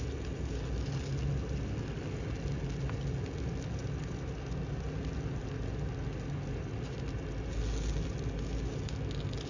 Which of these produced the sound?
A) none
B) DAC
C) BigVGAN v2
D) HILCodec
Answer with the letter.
A